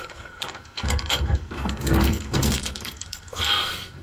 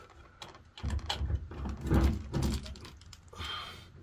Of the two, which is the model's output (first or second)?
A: first